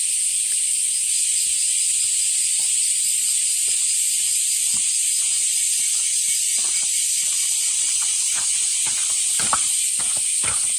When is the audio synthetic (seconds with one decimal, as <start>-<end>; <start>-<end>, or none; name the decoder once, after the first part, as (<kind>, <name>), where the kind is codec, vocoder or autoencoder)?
0.0-1.3 (vocoder, BigVGAN v2); 2.3-5.0; 5.7-9.9; 10.4-10.8